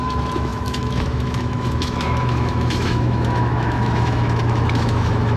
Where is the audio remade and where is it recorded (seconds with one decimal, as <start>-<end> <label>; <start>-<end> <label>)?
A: 0.0-5.4 remade